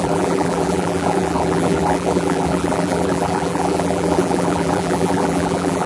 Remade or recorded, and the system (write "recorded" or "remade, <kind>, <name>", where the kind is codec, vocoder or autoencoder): remade, vocoder, BigVGAN v2